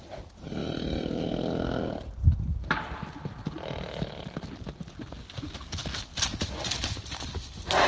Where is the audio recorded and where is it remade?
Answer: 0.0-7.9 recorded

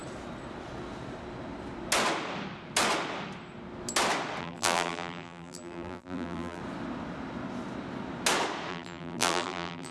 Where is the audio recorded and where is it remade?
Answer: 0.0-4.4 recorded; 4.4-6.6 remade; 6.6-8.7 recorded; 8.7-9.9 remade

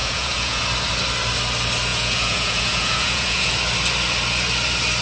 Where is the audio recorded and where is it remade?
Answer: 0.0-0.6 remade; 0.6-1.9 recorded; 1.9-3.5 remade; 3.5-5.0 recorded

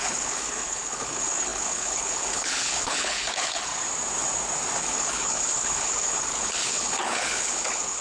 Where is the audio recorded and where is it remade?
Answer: 0.0-3.7 remade; 3.7-4.8 recorded; 4.8-8.0 remade

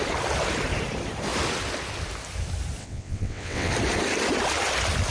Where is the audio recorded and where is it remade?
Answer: 0.0-2.8 recorded; 2.8-3.7 remade; 3.7-5.1 recorded

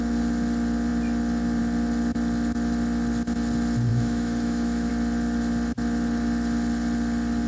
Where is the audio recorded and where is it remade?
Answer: 0.0-3.9 recorded; 3.9-4.9 remade; 4.9-7.5 recorded